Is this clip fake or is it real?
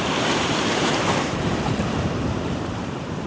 fake